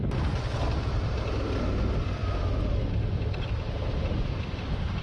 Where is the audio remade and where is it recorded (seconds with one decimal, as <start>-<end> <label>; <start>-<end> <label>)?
0.0-5.0 recorded